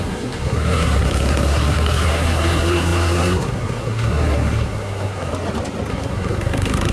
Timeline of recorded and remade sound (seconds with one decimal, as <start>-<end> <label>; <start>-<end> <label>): 0.0-5.3 remade; 5.3-5.9 recorded; 5.9-6.9 remade

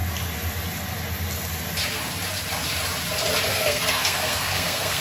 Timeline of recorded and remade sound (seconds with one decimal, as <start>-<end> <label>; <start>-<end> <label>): 0.0-3.5 recorded; 3.5-5.0 remade

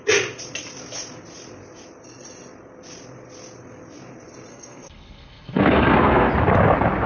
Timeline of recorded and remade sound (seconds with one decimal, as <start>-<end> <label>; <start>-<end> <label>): 0.0-4.5 recorded; 4.5-6.3 remade; 6.3-7.1 recorded

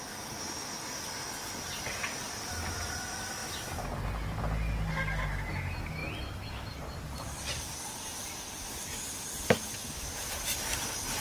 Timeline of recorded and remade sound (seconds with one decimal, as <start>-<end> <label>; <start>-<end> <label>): 0.0-11.2 recorded

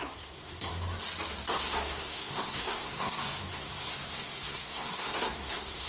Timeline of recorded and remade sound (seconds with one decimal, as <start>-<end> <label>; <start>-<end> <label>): 0.0-0.7 remade; 0.7-1.5 recorded; 1.5-5.9 remade